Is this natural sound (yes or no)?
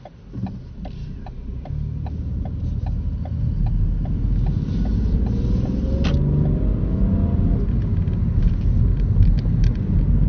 yes